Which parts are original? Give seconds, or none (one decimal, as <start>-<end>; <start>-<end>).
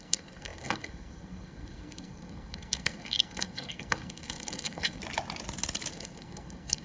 5.0-5.9